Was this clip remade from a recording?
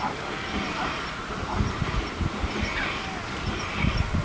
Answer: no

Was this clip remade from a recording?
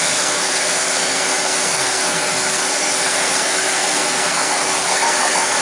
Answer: yes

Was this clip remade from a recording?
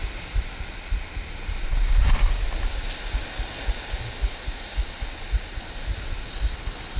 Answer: no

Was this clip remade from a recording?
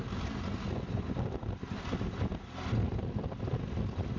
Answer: no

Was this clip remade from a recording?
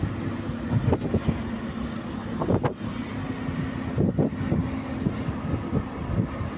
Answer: no